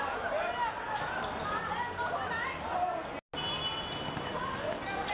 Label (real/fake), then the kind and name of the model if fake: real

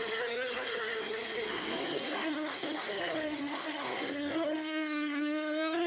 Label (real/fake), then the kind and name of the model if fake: fake, codec, SNAC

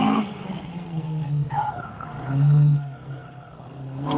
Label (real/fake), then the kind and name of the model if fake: fake, codec, SNAC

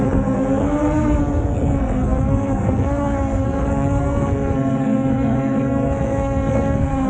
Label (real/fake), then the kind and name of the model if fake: fake, codec, SNAC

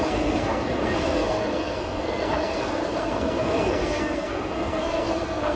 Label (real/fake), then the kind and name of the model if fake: fake, codec, SNAC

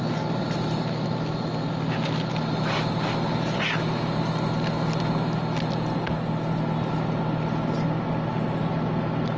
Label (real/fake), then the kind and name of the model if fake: real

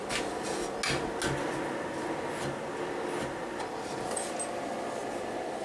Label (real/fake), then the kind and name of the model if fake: real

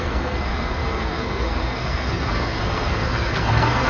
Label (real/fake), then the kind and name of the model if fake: fake, codec, SNAC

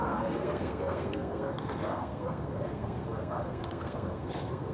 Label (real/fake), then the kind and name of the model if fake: fake, codec, SNAC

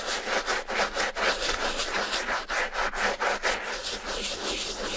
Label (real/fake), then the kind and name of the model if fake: real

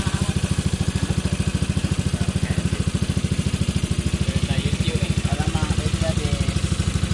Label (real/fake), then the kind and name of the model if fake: real